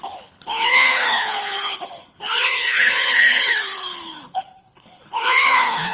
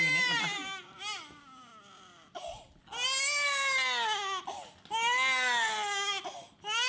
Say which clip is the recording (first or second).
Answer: second